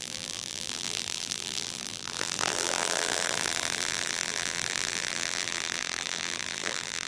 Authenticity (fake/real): fake